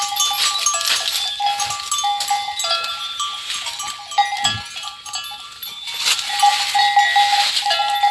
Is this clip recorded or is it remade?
recorded